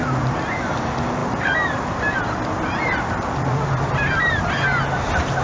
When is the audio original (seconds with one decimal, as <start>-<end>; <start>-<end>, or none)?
0.6-1.2; 4.4-5.4